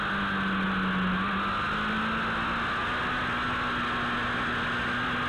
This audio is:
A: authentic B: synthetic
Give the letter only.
A